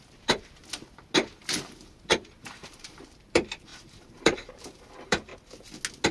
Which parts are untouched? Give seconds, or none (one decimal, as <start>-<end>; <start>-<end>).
0.6-1.6; 5.3-6.1